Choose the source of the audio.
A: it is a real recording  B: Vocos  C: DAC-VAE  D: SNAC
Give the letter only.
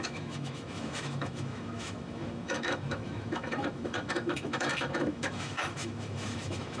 C